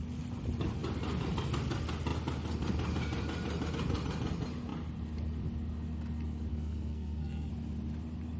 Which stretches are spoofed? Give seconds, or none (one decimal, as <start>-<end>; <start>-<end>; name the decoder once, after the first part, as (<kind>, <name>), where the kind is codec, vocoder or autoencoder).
6.5-7.5 (codec, SNAC)